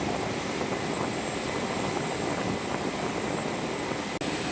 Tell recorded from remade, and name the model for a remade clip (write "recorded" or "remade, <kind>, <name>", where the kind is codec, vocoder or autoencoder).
recorded